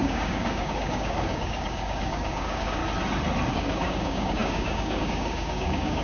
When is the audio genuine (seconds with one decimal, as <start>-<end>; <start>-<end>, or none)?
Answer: 2.8-3.5